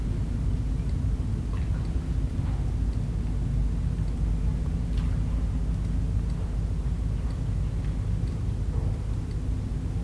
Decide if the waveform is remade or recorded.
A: recorded